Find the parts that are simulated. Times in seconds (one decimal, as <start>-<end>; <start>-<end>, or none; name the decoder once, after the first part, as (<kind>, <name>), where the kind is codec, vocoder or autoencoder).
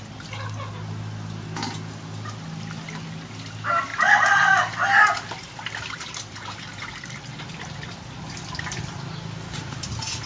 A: none